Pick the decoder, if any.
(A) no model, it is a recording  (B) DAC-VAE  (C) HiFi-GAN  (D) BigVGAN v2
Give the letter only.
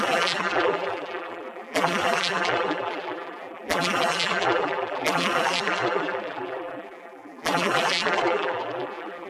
D